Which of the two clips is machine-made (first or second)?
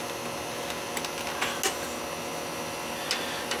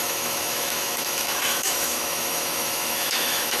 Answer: second